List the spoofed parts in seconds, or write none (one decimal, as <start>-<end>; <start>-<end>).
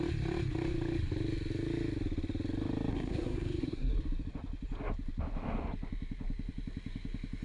2.9-3.9